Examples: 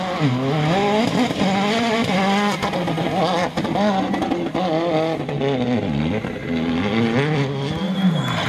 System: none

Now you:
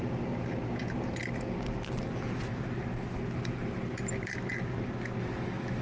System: none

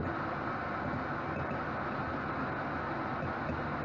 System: none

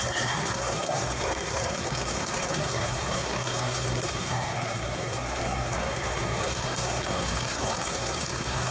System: codec, SNAC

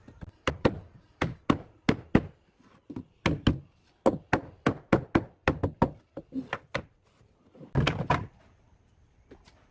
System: none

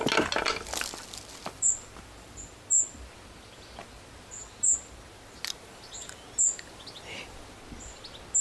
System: none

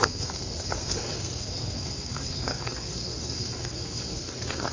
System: codec, SNAC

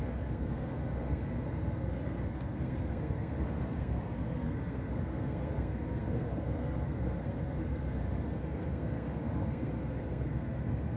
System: codec, SNAC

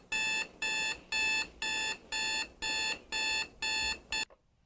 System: none